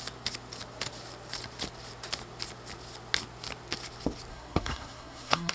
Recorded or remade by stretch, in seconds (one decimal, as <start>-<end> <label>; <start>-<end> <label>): 0.0-4.3 recorded; 4.3-5.5 remade